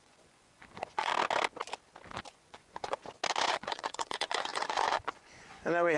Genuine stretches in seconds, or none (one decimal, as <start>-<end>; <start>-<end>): 1.1-2.3; 3.0-3.5